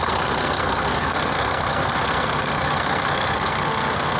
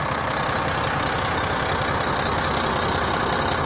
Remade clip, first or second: first